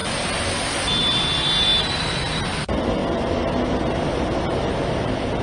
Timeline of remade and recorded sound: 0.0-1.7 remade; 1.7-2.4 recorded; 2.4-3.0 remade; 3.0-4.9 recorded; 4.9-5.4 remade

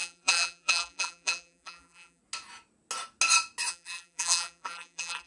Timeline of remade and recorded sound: 0.0-2.2 remade; 2.2-3.7 recorded; 3.7-5.3 remade

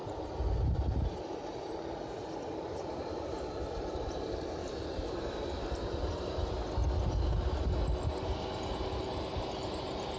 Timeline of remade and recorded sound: 0.0-6.8 remade; 6.8-10.2 recorded

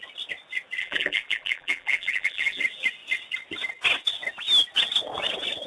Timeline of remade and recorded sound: 0.0-0.8 recorded; 0.8-2.6 remade; 2.6-5.7 recorded

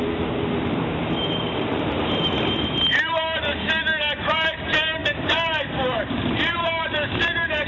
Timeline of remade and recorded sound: 0.0-7.7 remade

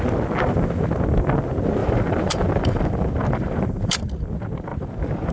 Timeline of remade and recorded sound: 0.0-1.8 recorded; 1.8-4.1 remade; 4.1-4.7 recorded; 4.7-5.3 remade

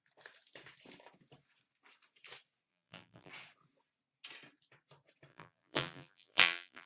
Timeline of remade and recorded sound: 0.0-2.7 recorded; 2.7-3.3 remade; 3.3-5.3 recorded; 5.3-6.9 remade